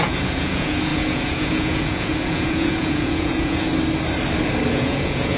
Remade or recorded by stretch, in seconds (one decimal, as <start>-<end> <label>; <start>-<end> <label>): 0.0-3.7 remade; 3.7-4.7 recorded; 4.7-5.4 remade